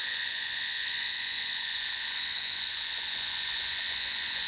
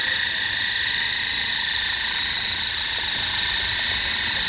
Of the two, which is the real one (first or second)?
second